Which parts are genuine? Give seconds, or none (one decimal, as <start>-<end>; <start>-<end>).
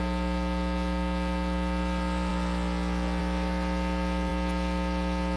0.0-5.4